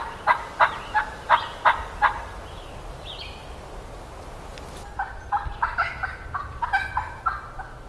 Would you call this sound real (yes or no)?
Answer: yes